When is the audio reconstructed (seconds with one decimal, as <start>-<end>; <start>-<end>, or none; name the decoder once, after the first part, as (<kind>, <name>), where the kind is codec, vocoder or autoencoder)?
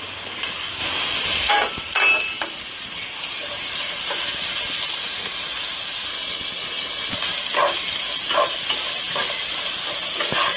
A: 6.1-7.1 (codec, HILCodec)